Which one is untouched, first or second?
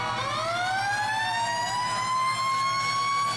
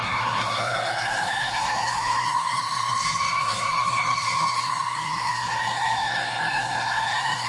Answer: first